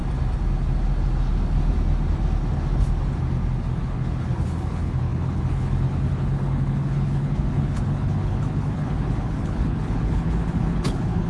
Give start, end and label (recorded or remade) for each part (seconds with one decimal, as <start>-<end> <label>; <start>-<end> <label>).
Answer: 0.0-3.8 recorded; 3.8-11.3 remade